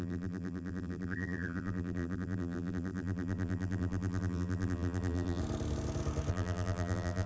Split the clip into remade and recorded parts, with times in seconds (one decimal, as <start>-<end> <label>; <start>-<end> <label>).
0.0-5.4 remade; 5.4-6.3 recorded; 6.3-7.3 remade